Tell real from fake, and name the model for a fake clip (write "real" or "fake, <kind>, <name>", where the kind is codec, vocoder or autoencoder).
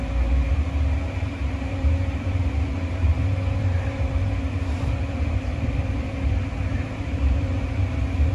fake, vocoder, BigVGAN v2